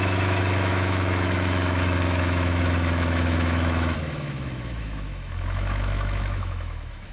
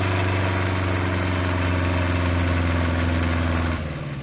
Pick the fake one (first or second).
first